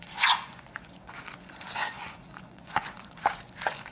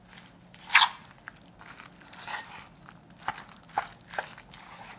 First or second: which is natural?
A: second